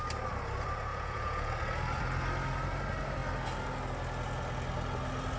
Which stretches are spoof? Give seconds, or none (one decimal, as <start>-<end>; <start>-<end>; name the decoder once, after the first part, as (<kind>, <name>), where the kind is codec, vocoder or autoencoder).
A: 0.9-1.5 (vocoder, Vocos)